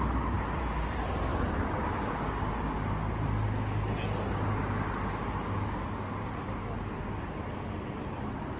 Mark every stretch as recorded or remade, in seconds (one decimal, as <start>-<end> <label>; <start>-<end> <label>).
0.0-8.6 recorded